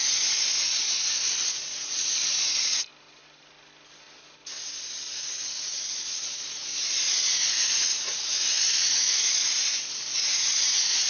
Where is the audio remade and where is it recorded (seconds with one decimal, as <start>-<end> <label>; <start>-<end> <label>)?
0.0-2.9 remade; 2.9-5.3 recorded; 5.3-11.1 remade